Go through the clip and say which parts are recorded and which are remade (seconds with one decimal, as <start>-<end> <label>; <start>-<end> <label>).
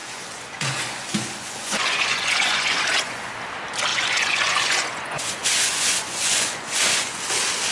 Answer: 0.0-3.3 remade; 3.3-3.9 recorded; 3.9-7.2 remade; 7.2-7.7 recorded